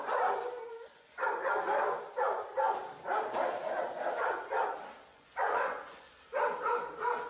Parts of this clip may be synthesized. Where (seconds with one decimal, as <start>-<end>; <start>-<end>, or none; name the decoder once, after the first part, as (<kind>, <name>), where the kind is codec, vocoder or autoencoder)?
0.9-1.5 (vocoder, Vocos); 5.1-6.1